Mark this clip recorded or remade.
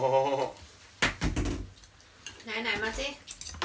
recorded